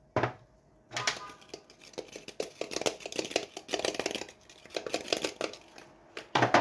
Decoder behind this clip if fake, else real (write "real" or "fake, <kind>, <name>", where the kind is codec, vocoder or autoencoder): real